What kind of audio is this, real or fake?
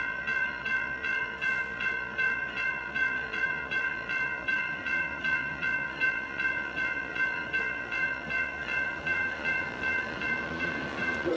fake